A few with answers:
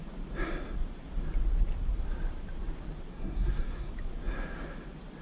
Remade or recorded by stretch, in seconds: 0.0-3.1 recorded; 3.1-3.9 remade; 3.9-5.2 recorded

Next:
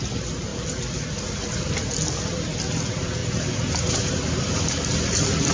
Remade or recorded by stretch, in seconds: 0.0-5.5 recorded

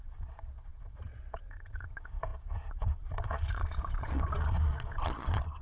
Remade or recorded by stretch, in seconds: 0.0-5.6 remade

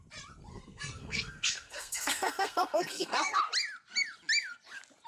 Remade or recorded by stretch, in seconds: 0.0-0.5 recorded; 0.5-3.4 remade; 3.4-5.1 recorded

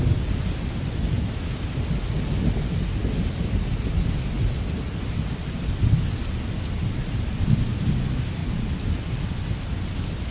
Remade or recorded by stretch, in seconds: 0.0-2.7 remade; 2.7-8.4 recorded; 8.4-9.7 remade; 9.7-10.3 recorded

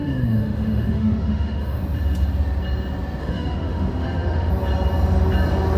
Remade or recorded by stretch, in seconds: 0.0-1.8 remade; 1.8-3.2 recorded; 3.2-4.5 remade; 4.5-5.8 recorded